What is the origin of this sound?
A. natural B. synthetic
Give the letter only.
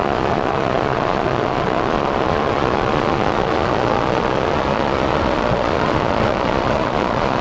B